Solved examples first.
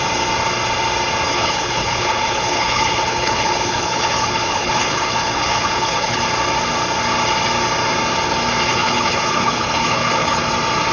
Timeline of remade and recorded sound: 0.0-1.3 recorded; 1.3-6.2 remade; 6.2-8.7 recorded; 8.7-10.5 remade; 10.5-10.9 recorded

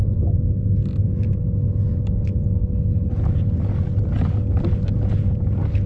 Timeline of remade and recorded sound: 0.0-2.6 recorded; 2.6-3.2 remade; 3.2-5.9 recorded

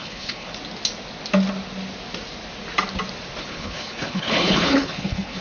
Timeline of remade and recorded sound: 0.0-0.5 remade; 0.5-3.4 recorded; 3.4-5.4 remade